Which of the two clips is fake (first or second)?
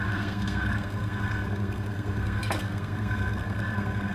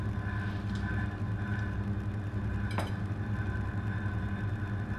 first